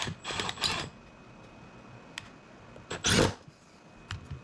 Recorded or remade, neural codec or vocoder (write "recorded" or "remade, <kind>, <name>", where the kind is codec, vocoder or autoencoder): recorded